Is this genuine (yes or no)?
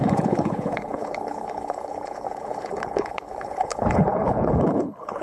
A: no